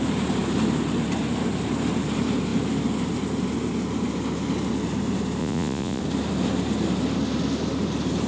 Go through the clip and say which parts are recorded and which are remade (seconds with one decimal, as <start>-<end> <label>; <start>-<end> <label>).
0.0-5.4 recorded; 5.4-6.0 remade; 6.0-8.3 recorded